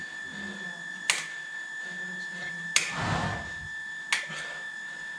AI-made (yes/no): no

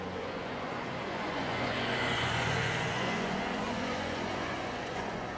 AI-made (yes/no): yes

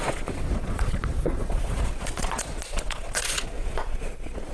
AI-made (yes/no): yes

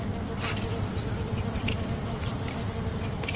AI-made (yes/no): no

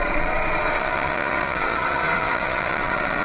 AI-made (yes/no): yes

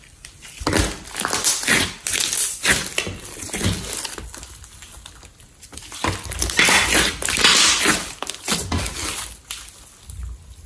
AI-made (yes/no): no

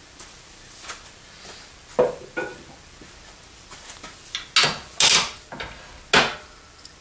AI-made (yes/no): no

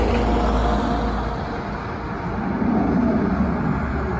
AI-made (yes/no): no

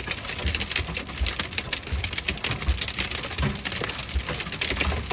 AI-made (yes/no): no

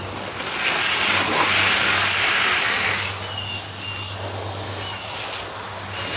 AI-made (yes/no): no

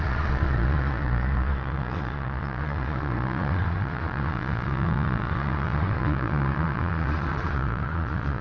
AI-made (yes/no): yes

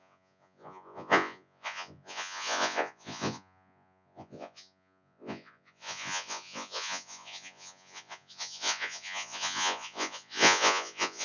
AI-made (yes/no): yes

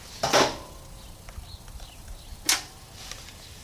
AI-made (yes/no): no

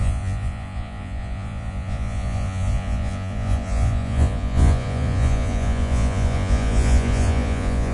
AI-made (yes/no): yes